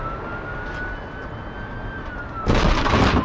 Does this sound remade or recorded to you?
recorded